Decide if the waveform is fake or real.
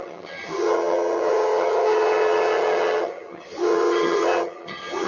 fake